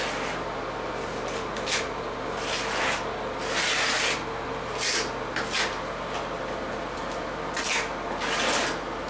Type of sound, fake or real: real